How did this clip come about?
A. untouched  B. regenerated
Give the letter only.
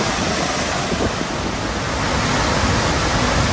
A